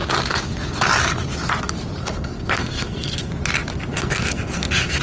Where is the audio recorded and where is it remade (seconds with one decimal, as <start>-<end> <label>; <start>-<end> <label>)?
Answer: 0.0-2.0 recorded; 2.0-3.3 remade; 3.3-3.9 recorded; 3.9-5.0 remade

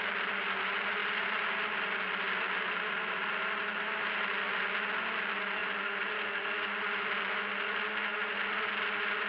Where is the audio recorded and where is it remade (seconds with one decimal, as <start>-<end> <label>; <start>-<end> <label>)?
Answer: 0.0-9.3 recorded

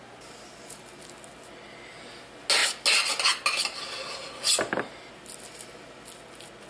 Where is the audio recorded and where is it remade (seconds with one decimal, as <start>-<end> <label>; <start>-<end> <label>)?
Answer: 0.0-6.7 recorded

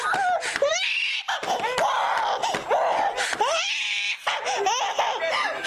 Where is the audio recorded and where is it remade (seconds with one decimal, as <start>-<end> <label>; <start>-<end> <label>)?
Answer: 0.0-5.7 recorded

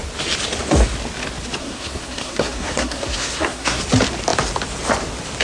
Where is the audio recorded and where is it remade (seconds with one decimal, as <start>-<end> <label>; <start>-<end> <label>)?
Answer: 0.0-1.6 recorded; 1.6-3.8 remade; 3.8-5.4 recorded

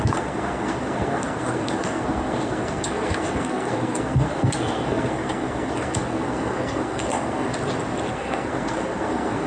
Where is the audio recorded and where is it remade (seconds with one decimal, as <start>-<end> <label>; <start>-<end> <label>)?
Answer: 0.0-7.5 remade; 7.5-8.1 recorded; 8.1-9.5 remade